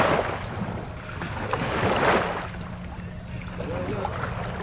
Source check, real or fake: real